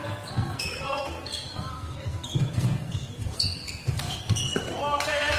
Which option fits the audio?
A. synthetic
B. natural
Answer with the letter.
A